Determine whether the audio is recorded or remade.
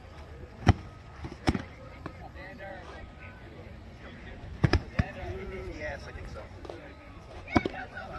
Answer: remade